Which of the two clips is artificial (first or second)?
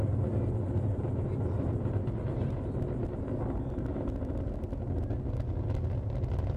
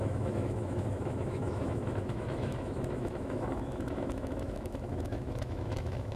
second